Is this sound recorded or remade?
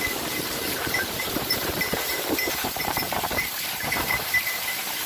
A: remade